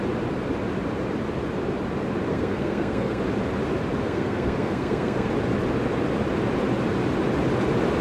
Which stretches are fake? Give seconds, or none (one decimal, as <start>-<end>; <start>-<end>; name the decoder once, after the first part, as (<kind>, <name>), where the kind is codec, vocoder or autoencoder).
2.3-3.2 (codec, SNAC); 4.0-5.3